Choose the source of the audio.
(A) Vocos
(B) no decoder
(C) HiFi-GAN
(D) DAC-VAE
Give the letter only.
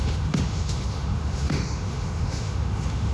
D